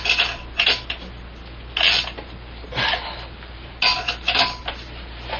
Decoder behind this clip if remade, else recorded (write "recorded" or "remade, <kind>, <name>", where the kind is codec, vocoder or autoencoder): recorded